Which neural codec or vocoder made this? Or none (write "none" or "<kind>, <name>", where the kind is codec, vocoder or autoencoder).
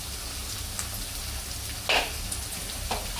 none